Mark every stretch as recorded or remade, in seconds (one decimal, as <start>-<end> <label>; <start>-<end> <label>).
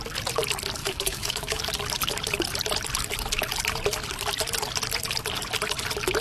0.0-0.8 recorded; 0.8-1.6 remade; 1.6-6.2 recorded